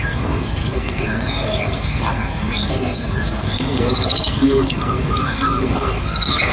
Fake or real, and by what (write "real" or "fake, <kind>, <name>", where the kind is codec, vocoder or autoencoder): fake, codec, SNAC